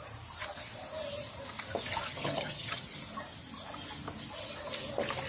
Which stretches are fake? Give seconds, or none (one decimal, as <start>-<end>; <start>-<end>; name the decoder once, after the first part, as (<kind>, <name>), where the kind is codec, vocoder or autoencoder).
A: 2.1-2.9 (vocoder, HiFi-GAN)